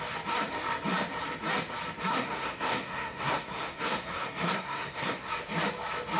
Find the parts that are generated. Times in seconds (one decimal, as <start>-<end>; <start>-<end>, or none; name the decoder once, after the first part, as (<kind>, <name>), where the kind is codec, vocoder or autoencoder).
2.1-5.3 (codec, SNAC)